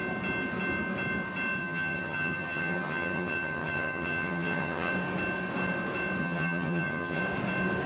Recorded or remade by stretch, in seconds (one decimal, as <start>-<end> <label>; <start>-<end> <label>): 0.0-1.6 recorded; 1.6-4.9 remade; 4.9-6.2 recorded; 6.2-7.2 remade; 7.2-7.9 recorded